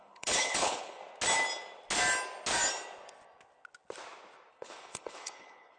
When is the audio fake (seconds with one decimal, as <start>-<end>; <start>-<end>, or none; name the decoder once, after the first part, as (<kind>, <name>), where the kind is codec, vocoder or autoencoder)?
0.0-1.0 (codec, HILCodec); 4.5-5.8